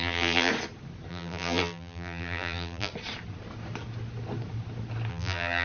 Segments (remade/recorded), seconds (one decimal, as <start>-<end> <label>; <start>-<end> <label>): 0.0-0.5 remade; 0.5-1.1 recorded; 1.1-2.9 remade; 2.9-5.1 recorded; 5.1-5.6 remade